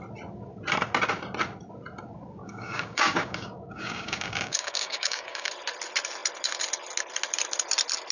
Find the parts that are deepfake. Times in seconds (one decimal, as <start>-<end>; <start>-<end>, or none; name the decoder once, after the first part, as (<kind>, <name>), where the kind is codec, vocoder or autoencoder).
2.4-5.5 (codec, DAC)